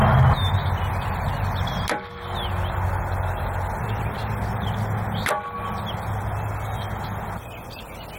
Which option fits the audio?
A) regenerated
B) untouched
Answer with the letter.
B